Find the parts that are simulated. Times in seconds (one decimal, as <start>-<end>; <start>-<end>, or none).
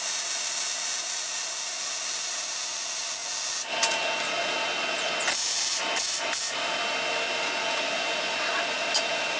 none